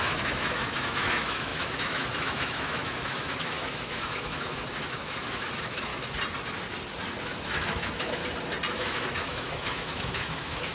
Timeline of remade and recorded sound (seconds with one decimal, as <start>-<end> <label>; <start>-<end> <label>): 0.0-5.9 remade; 5.9-7.2 recorded; 7.2-8.2 remade; 8.2-8.7 recorded; 8.7-10.7 remade